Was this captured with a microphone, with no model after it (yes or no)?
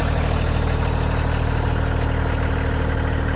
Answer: yes